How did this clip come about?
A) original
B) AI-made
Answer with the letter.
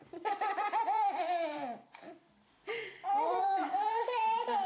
B